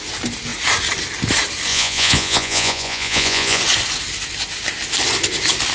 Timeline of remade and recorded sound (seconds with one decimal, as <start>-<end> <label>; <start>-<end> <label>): 0.0-1.7 recorded; 1.7-3.6 remade; 3.6-5.7 recorded